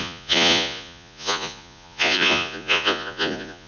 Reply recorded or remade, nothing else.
remade